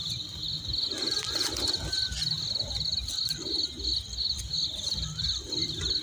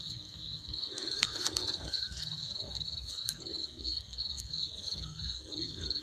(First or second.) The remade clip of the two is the second